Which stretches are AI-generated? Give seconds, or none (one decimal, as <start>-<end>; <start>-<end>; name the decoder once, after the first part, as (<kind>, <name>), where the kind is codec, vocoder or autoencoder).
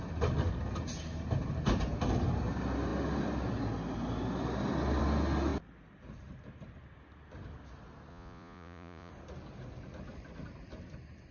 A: 8.1-9.1 (vocoder, Vocos)